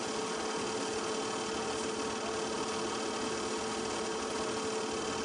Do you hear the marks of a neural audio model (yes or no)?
no